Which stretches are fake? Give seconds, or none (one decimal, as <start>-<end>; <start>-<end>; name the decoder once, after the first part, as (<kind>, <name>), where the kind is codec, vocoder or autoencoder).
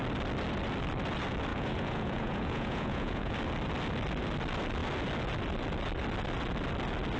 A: 1.5-3.3 (vocoder, Vocos)